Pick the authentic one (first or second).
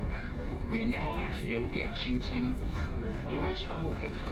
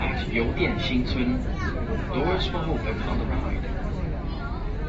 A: second